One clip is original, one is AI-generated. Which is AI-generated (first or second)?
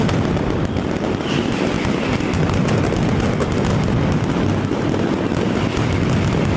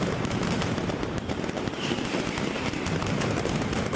second